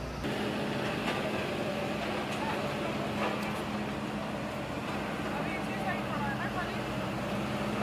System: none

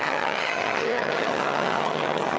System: vocoder, HiFi-GAN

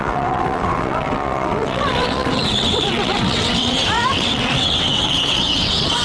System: vocoder, WaveNeXt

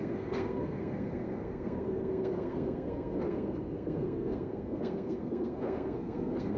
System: codec, SNAC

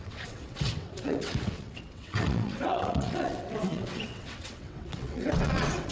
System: vocoder, WaveNeXt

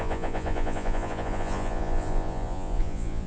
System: vocoder, Vocos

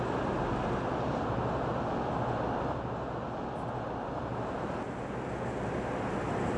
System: none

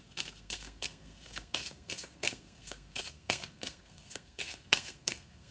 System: codec, SNAC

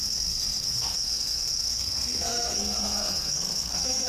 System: codec, SNAC